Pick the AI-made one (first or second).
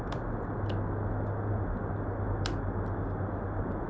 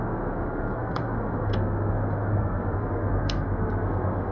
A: second